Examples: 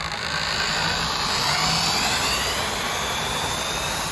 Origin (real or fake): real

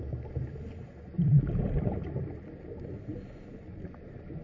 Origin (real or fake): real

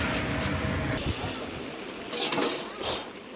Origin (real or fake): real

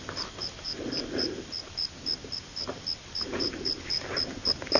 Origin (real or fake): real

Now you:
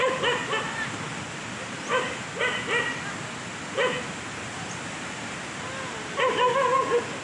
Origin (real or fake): real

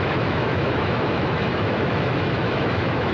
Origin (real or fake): fake